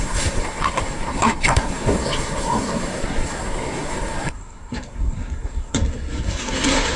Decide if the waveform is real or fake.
fake